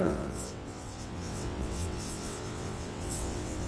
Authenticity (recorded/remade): remade